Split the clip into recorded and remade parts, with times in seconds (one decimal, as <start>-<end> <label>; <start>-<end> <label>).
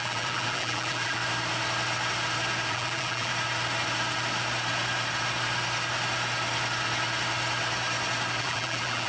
0.0-1.2 remade; 1.2-2.7 recorded; 2.7-3.3 remade; 3.3-8.4 recorded; 8.4-9.1 remade